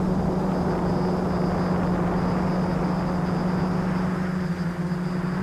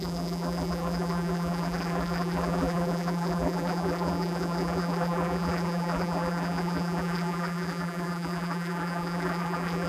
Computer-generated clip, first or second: second